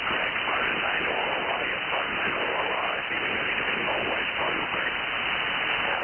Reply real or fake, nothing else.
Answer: real